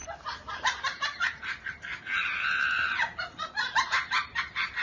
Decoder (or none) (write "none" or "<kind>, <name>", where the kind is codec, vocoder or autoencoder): vocoder, BigVGAN v2